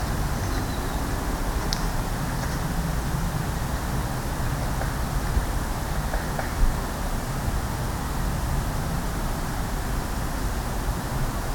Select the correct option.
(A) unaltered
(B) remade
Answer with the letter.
A